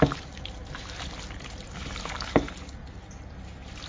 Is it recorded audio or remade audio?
recorded